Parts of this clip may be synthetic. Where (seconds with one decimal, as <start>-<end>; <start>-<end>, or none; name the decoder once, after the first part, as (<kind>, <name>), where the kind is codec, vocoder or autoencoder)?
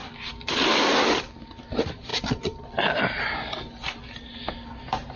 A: none